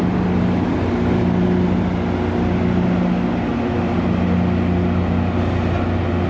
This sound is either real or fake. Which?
real